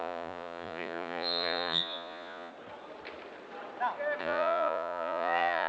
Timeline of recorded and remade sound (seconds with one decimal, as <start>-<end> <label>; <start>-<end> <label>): 0.0-2.5 remade; 2.5-4.2 recorded; 4.2-5.7 remade